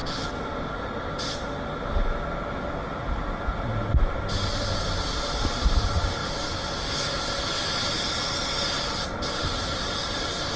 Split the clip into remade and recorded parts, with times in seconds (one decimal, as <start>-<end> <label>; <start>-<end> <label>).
0.0-10.6 recorded